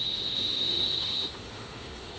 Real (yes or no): no